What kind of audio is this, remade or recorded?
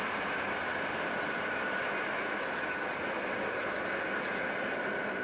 recorded